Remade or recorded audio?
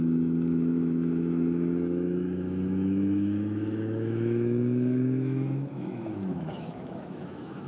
remade